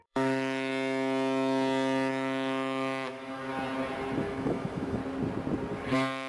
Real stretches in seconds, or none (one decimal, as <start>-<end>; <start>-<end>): 0.7-2.1; 3.5-4.2; 5.0-6.3